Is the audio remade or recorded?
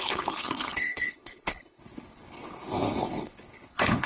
remade